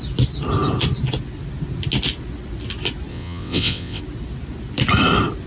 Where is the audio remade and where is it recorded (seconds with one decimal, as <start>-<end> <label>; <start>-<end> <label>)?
0.0-3.1 recorded; 3.1-4.0 remade; 4.0-5.5 recorded